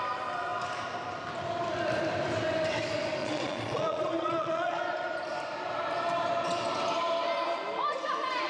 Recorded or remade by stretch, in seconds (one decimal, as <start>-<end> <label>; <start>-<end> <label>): 0.0-3.2 recorded; 3.2-4.8 remade; 4.8-8.5 recorded